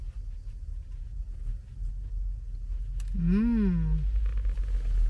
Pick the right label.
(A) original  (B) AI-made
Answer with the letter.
A